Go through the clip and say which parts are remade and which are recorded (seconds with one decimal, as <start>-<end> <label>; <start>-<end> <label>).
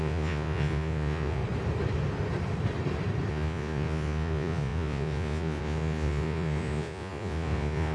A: 0.0-1.4 remade; 1.4-3.3 recorded; 3.3-7.9 remade